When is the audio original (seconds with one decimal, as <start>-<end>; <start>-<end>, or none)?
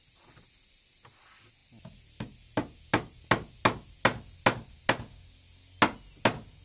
0.0-6.6